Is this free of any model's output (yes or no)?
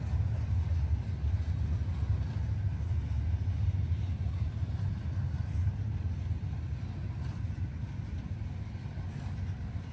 yes